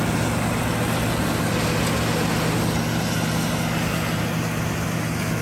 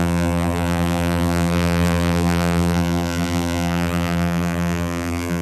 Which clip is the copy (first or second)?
second